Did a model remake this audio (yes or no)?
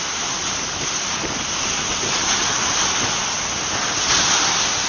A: no